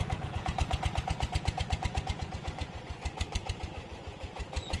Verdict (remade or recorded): remade